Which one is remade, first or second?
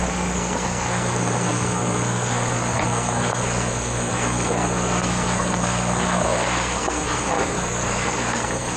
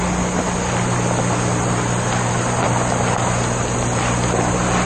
first